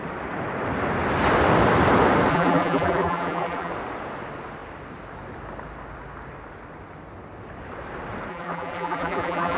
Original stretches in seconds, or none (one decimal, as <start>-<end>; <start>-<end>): 0.0-2.3; 3.7-8.3